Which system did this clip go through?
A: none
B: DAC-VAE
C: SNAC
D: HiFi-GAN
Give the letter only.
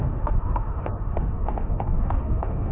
B